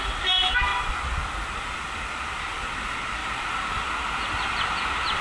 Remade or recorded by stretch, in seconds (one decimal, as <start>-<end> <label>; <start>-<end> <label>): 0.0-5.2 recorded